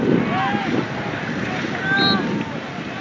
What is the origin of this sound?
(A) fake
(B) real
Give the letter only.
B